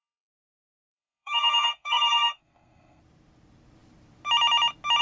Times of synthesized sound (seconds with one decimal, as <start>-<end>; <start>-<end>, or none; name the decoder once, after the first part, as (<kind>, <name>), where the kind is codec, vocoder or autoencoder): 0.0-3.0 (codec, SNAC)